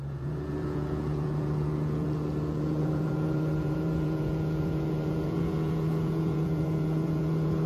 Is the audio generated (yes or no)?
yes